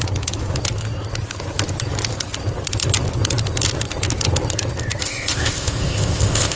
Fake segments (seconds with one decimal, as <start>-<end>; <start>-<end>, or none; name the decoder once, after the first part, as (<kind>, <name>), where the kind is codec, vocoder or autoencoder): 5.0-6.6 (codec, ZipCodec)